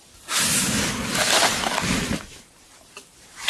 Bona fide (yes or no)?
yes